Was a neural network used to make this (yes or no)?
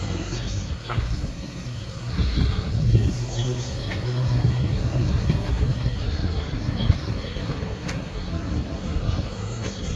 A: yes